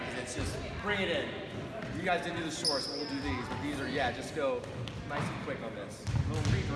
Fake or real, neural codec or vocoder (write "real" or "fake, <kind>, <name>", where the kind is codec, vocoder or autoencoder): real